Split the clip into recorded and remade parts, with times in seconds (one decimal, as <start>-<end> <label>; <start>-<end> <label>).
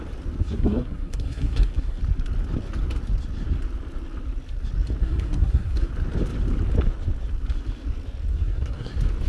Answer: 0.0-0.4 recorded; 0.4-2.0 remade; 2.0-5.0 recorded; 5.0-5.9 remade; 5.9-8.3 recorded; 8.3-8.9 remade; 8.9-9.3 recorded